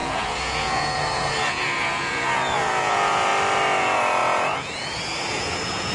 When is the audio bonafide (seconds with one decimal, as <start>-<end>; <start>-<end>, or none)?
3.3-3.8